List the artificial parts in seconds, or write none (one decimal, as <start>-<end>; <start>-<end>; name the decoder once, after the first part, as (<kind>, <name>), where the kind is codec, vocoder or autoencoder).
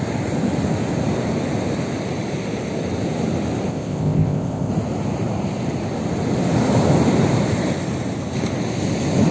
3.7-4.7 (codec, ZipCodec)